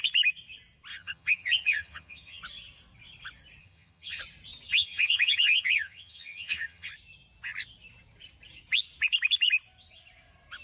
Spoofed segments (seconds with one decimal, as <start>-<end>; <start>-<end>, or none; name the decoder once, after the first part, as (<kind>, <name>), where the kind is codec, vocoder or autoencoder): 0.9-2.4 (vocoder, HiFi-GAN); 3.6-4.2; 4.7-6.9